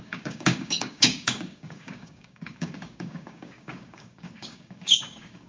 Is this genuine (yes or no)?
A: no